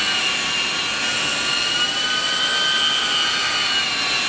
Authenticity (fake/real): real